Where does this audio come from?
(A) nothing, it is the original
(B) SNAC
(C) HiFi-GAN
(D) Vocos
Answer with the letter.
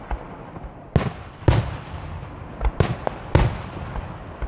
A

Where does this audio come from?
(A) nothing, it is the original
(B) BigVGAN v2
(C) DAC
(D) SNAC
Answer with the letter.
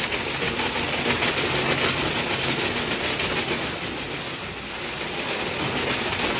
A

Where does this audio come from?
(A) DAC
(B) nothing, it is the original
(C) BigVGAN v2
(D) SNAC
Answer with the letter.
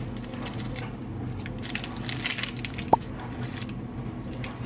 B